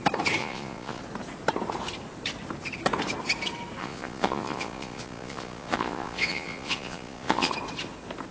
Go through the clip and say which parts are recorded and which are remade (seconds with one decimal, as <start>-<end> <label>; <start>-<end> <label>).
0.0-0.4 recorded; 0.4-1.0 remade; 1.0-3.8 recorded; 3.8-7.5 remade; 7.5-8.3 recorded